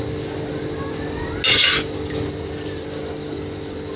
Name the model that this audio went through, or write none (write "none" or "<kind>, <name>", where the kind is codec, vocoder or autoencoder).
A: none